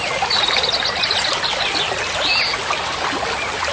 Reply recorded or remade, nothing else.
recorded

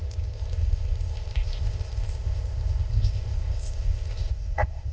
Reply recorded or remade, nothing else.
remade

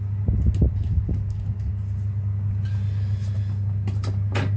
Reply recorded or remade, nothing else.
recorded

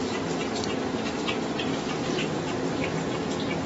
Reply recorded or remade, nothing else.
recorded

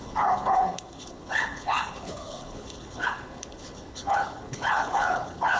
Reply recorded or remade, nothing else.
remade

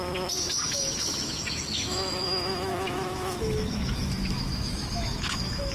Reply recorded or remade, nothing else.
remade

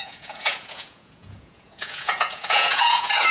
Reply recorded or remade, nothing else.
remade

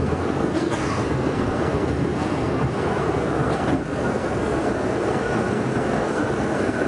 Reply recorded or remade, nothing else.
remade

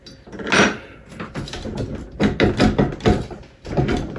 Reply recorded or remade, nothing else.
recorded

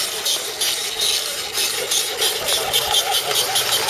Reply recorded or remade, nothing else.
recorded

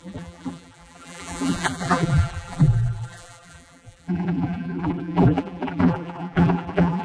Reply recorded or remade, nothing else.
remade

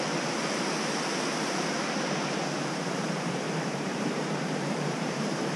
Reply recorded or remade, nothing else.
remade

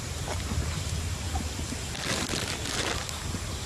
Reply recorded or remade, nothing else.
recorded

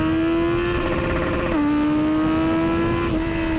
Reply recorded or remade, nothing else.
recorded